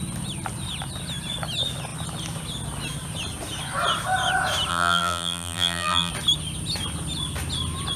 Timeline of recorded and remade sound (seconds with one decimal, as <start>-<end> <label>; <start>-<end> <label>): 0.0-4.7 recorded; 4.7-6.1 remade; 6.1-8.0 recorded